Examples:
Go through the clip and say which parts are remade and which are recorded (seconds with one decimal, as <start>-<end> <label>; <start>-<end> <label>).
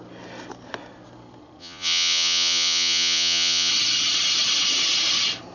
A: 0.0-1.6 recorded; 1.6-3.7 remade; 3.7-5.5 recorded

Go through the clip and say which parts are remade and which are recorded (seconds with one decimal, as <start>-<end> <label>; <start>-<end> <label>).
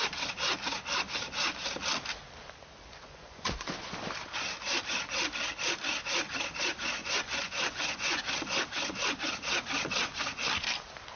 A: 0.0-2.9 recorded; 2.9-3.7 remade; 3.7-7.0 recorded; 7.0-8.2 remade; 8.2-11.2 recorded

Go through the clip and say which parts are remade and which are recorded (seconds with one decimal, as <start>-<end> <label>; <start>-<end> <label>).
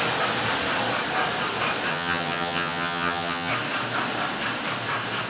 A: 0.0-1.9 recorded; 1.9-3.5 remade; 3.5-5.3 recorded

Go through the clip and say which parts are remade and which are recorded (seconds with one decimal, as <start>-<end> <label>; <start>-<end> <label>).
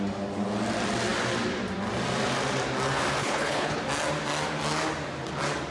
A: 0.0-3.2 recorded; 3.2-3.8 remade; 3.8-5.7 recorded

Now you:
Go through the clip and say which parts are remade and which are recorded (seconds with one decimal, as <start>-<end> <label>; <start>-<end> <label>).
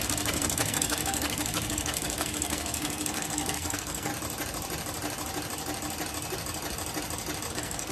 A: 0.0-4.1 remade; 4.1-7.5 recorded; 7.5-7.9 remade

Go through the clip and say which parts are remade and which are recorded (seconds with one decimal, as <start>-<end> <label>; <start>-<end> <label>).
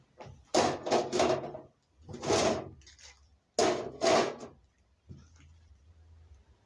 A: 0.0-6.7 recorded